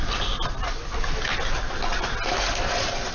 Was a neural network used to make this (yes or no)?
no